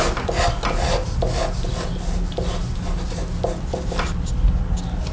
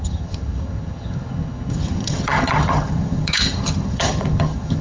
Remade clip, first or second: second